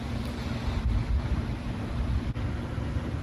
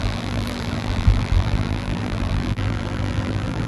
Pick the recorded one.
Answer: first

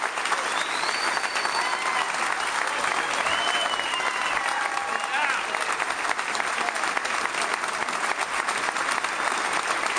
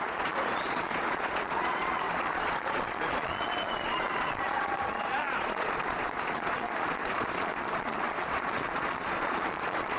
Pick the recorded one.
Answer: first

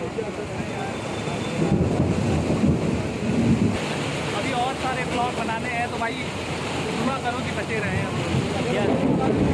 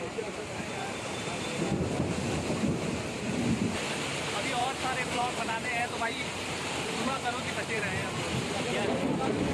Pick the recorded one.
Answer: first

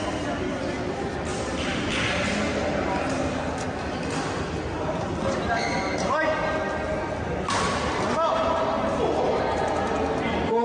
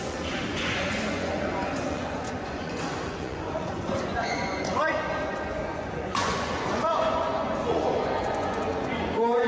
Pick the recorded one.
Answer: first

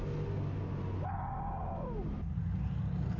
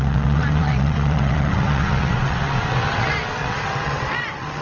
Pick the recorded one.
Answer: first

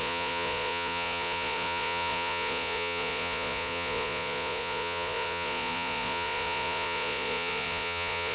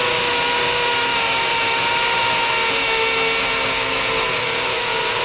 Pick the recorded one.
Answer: second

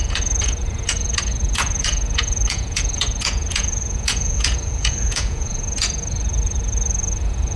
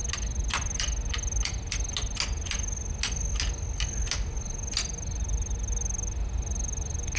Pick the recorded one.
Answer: second